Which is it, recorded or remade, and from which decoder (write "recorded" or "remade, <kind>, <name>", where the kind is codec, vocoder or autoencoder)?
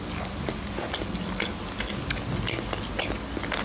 recorded